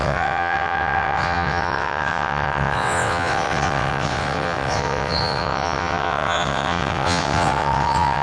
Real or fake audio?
fake